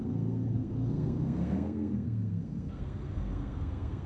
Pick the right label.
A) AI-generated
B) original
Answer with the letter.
A